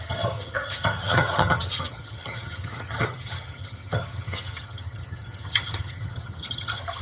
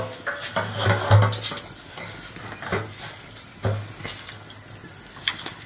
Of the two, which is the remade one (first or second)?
first